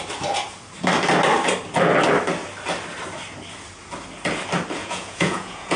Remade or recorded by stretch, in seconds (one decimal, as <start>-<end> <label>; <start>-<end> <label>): 0.0-4.8 recorded; 4.8-5.8 remade